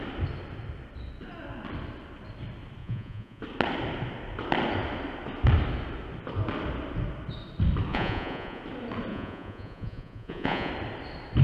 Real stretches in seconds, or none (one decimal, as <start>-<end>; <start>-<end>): 0.0-2.8; 3.4-7.9; 8.6-9.1; 10.7-11.4